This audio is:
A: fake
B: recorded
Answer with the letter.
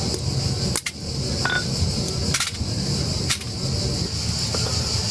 B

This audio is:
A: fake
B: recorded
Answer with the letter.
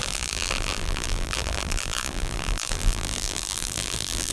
A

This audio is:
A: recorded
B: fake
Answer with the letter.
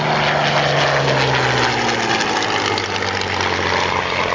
A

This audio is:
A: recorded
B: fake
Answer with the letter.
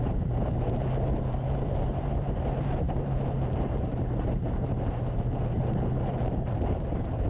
B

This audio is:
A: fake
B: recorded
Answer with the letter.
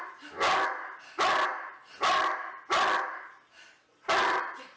B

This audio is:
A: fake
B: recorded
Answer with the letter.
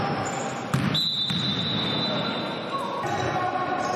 B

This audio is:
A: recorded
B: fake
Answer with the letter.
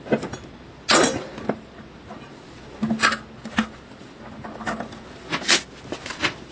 A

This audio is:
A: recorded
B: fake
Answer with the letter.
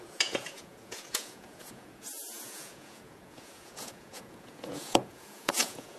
B